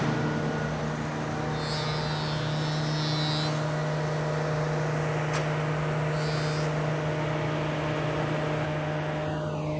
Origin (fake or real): real